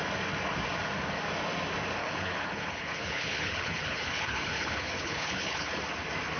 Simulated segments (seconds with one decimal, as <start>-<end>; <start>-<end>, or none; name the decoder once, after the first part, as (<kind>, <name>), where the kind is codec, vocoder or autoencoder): 2.0-5.8 (codec, HILCodec)